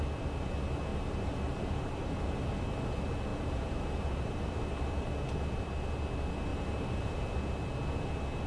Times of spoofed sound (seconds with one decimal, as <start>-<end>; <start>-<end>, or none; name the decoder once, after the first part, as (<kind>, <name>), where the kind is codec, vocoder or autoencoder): 0.9-2.5 (vocoder, BigVGAN v2); 3.3-4.6; 6.5-7.2